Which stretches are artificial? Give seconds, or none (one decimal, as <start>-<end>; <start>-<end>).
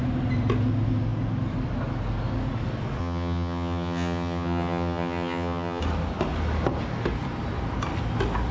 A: 3.0-5.8